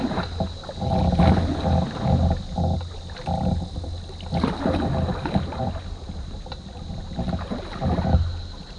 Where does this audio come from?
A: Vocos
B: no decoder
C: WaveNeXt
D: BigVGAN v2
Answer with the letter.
B